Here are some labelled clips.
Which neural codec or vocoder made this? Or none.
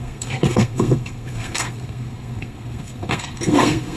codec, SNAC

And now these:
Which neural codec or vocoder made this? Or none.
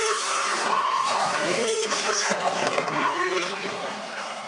codec, SNAC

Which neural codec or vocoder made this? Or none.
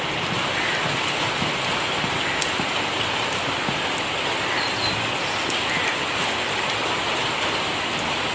none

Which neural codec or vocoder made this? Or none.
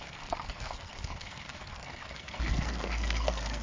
codec, SNAC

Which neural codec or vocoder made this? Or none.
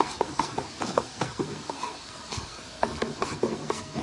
codec, SNAC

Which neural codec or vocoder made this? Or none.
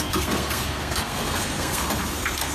codec, SNAC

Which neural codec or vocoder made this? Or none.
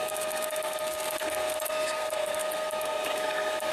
codec, SNAC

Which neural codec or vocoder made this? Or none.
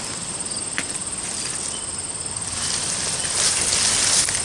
none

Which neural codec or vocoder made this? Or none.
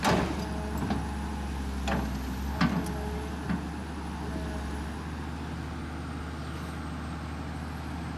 none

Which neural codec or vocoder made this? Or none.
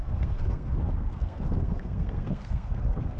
codec, SNAC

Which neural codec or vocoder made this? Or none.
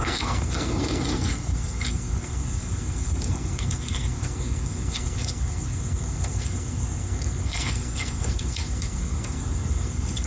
codec, SNAC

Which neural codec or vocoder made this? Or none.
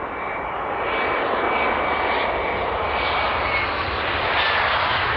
none